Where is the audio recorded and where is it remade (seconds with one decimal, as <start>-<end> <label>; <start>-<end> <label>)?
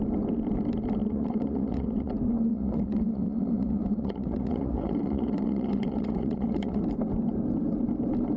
0.0-1.0 recorded; 1.0-2.1 remade; 2.1-2.5 recorded; 2.5-6.8 remade; 6.8-8.4 recorded